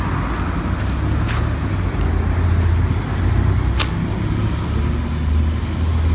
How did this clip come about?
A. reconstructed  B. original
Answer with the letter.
B